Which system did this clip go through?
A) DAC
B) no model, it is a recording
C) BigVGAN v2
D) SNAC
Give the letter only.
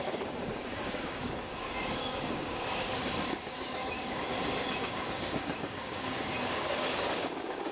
A